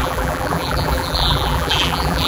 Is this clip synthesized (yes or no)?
yes